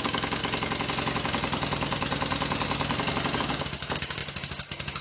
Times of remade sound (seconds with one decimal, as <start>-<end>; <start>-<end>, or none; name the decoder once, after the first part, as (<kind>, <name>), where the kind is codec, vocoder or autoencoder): 0.0-0.4 (codec, DAC); 3.4-5.0